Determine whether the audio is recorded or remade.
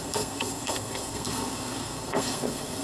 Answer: remade